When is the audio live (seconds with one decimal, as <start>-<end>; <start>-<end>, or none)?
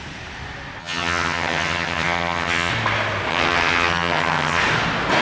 0.0-0.8; 2.7-3.3; 4.6-5.2